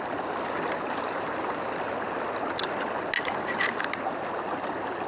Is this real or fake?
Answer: real